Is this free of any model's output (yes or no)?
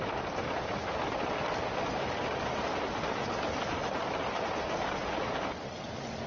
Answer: yes